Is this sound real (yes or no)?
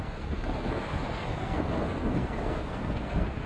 no